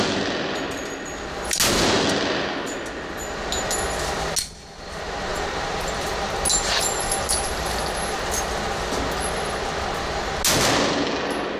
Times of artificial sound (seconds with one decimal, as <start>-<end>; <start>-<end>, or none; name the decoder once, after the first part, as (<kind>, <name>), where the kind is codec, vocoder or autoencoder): 5.3-7.7 (vocoder, BigVGAN v2)